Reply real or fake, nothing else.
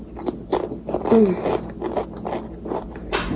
real